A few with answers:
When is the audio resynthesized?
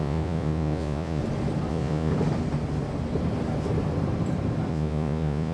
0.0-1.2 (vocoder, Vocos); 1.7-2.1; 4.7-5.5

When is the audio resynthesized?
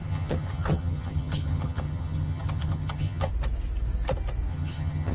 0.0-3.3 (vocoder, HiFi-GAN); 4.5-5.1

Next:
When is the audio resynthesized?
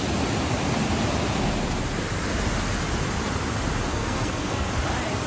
3.9-4.7 (codec, SNAC)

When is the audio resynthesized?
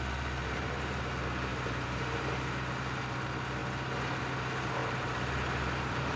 0.4-1.0 (vocoder, BigVGAN v2); 1.5-2.3; 4.8-6.2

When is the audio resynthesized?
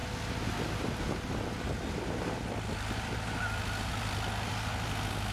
3.9-4.5 (vocoder, BigVGAN v2)